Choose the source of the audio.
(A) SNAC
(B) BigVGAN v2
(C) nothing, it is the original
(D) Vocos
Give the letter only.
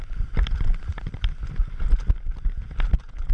B